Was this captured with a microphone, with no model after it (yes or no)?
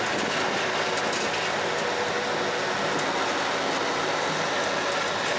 yes